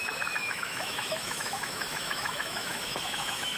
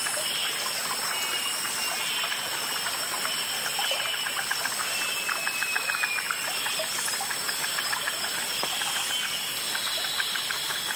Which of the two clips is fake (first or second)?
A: first